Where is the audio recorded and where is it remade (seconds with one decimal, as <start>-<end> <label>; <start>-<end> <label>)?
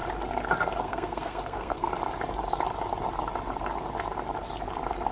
0.0-0.8 recorded; 0.8-1.9 remade; 1.9-5.1 recorded